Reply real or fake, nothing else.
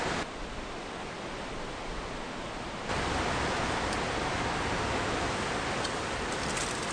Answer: real